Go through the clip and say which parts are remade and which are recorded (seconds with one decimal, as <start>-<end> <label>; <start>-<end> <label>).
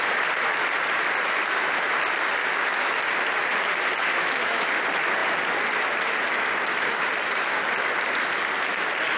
0.0-2.4 recorded; 2.4-3.0 remade; 3.0-4.0 recorded; 4.0-4.7 remade; 4.7-9.2 recorded